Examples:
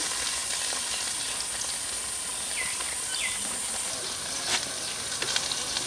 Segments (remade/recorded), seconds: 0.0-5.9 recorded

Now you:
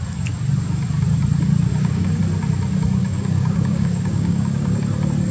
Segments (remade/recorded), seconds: 0.0-1.7 recorded; 1.7-2.2 remade; 2.2-3.0 recorded; 3.0-4.8 remade; 4.8-5.3 recorded

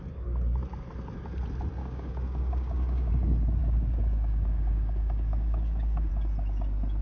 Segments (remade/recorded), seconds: 0.0-1.8 recorded; 1.8-3.1 remade; 3.1-3.6 recorded; 3.6-6.1 remade; 6.1-7.0 recorded

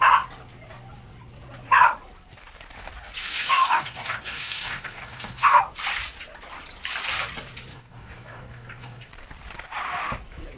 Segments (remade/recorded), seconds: 0.0-3.2 recorded; 3.2-5.6 remade; 5.6-7.7 recorded; 7.7-9.1 remade; 9.1-10.6 recorded

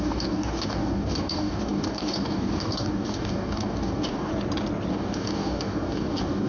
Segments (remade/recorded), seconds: 0.0-4.3 remade; 4.3-4.9 recorded; 4.9-6.5 remade

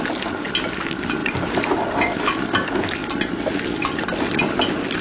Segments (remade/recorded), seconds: 0.0-5.0 recorded

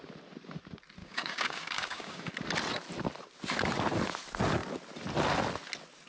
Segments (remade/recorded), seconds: 0.0-1.0 recorded; 1.0-2.3 remade; 2.3-6.1 recorded